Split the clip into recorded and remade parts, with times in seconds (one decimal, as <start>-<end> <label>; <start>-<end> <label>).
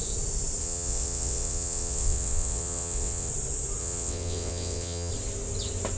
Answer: 0.0-0.6 recorded; 0.6-3.3 remade; 3.3-3.8 recorded; 3.8-5.1 remade; 5.1-6.0 recorded